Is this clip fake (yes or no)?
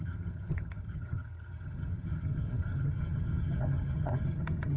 yes